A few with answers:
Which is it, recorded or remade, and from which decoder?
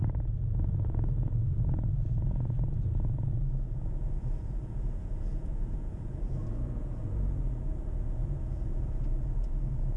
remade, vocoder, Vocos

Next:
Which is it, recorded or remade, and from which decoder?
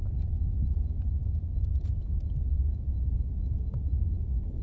remade, vocoder, Vocos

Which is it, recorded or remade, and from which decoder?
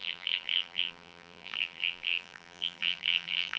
remade, vocoder, BigVGAN v2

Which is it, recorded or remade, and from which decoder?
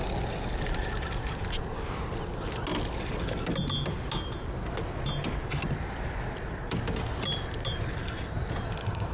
recorded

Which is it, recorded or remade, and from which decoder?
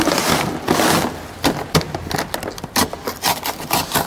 recorded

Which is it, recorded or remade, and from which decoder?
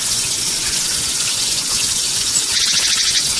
remade, vocoder, Vocos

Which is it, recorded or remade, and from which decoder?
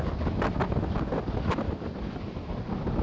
recorded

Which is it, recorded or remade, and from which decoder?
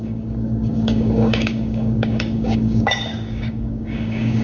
remade, codec, DAC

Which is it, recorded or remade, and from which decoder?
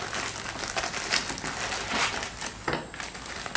recorded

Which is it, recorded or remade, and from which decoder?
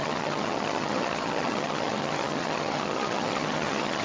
remade, vocoder, HiFi-GAN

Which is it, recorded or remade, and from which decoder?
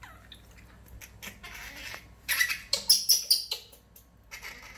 recorded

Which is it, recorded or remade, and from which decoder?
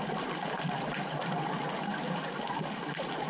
recorded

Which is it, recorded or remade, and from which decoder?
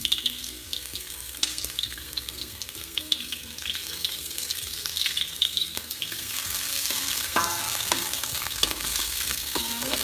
remade, codec, SNAC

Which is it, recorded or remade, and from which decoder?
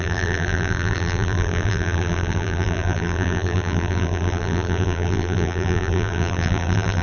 remade, vocoder, BigVGAN v2